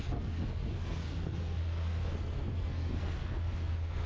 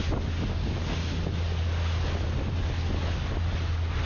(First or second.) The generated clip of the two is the first